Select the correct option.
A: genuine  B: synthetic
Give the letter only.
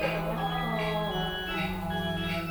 A